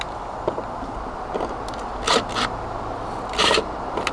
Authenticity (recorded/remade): recorded